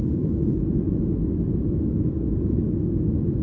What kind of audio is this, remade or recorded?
remade